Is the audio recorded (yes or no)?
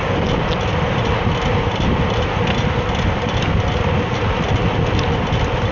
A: yes